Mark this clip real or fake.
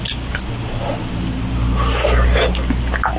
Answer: real